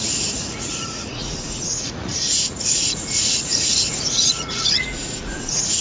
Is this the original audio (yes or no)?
no